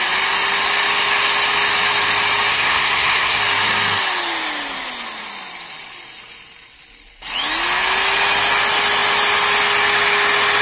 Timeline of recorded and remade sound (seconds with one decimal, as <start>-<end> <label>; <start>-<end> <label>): 0.0-2.5 recorded; 2.5-3.4 remade; 3.4-10.6 recorded